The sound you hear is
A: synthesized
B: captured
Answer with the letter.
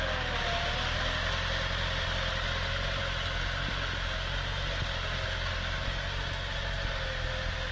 B